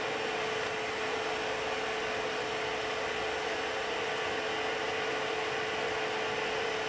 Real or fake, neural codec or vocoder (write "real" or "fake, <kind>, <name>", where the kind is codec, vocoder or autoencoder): real